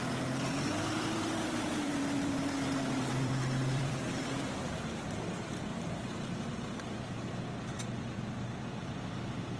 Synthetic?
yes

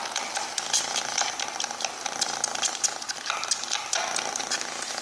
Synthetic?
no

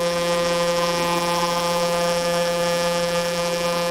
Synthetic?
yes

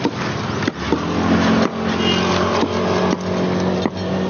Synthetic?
no